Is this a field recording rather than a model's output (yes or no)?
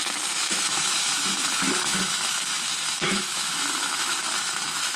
no